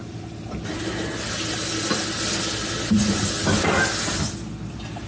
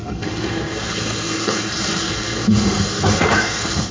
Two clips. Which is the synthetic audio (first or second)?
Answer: second